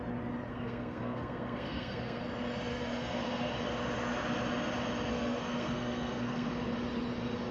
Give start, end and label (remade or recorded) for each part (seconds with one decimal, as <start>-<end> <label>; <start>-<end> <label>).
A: 0.0-0.5 recorded; 0.5-2.2 remade; 2.2-2.7 recorded; 2.7-3.5 remade; 3.5-5.1 recorded; 5.1-6.5 remade; 6.5-7.5 recorded